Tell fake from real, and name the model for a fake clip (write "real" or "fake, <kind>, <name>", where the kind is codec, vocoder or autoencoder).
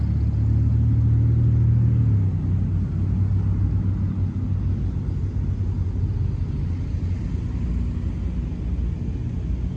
real